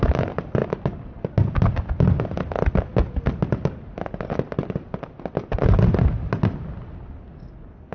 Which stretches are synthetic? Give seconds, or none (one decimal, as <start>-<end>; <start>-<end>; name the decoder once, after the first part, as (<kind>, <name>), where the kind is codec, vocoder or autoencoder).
none